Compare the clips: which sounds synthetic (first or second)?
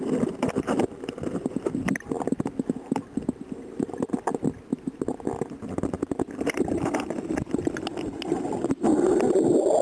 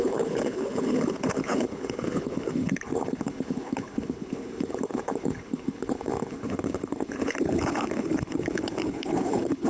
second